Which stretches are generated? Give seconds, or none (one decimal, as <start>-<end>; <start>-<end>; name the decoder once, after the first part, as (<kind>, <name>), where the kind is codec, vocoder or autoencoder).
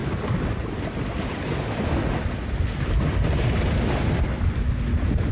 none